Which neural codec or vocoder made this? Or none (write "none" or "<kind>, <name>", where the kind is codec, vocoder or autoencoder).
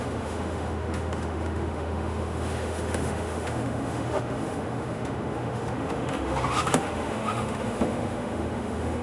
autoencoder, DAC-VAE